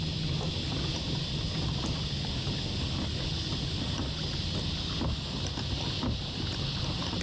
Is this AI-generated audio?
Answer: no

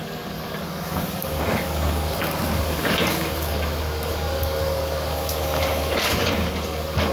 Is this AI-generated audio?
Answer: yes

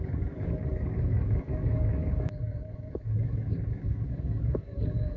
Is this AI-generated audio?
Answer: yes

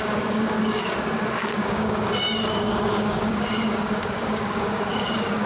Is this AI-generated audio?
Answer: yes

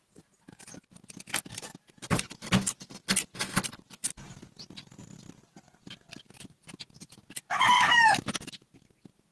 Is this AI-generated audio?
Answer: no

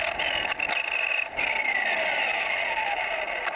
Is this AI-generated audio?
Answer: no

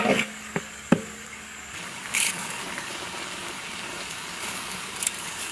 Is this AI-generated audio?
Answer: yes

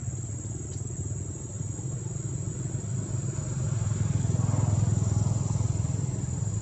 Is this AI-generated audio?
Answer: no